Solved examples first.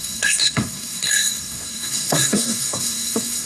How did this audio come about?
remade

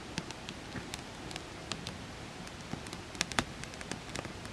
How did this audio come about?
recorded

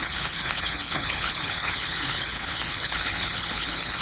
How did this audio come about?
remade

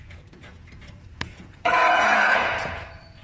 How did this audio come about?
remade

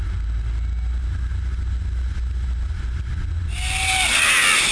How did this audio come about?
recorded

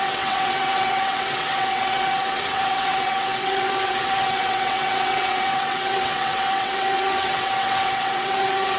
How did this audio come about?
remade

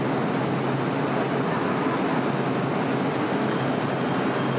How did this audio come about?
recorded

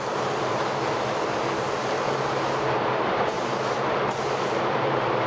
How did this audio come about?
remade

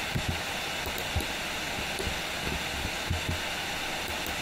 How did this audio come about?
recorded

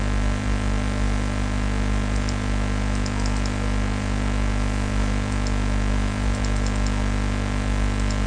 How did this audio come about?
recorded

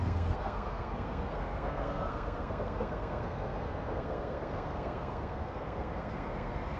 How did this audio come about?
remade